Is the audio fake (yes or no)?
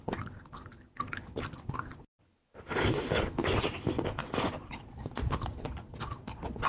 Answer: no